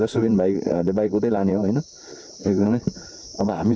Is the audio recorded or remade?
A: remade